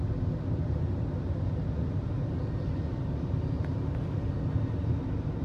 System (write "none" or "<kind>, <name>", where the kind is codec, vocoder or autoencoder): none